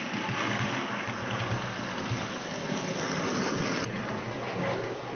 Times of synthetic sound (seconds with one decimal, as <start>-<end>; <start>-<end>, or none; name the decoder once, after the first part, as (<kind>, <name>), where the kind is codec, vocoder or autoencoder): none